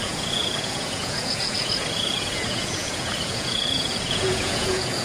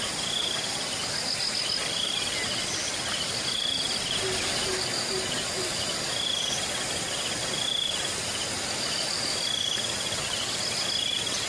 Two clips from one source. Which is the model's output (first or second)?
first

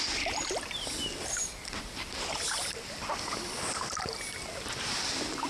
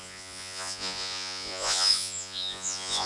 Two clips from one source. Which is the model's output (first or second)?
second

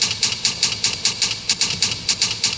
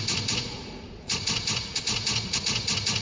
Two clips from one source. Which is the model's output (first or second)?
second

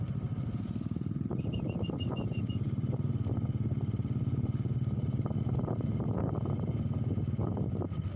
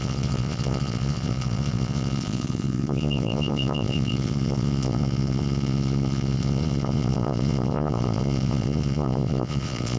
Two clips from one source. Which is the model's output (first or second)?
second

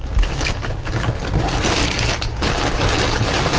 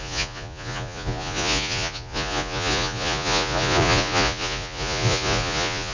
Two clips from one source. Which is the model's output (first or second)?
second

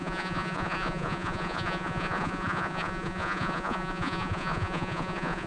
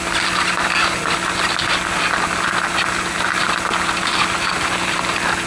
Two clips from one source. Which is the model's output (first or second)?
first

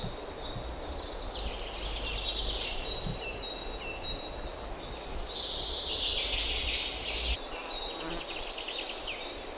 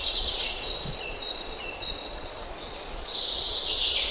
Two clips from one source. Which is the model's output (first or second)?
second